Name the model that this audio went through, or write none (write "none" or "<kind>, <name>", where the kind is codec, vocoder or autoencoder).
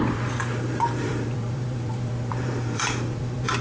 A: vocoder, BigVGAN v2